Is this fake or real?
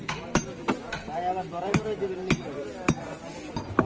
real